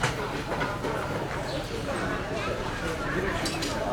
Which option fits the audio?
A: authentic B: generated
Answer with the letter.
B